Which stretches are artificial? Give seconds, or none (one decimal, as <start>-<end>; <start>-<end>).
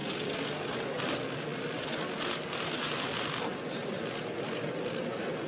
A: none